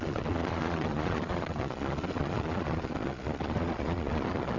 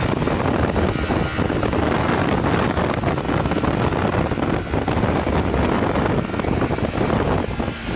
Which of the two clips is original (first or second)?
second